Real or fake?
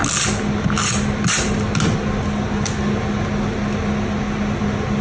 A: real